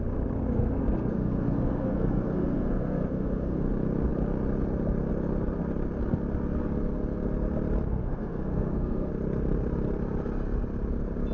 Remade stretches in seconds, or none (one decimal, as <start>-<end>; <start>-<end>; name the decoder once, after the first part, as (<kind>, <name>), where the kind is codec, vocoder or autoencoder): 0.5-3.6 (codec, SNAC); 8.0-9.1